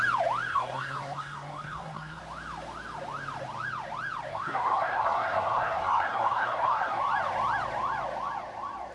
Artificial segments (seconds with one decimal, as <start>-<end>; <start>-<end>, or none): 0.5-2.2; 4.3-7.0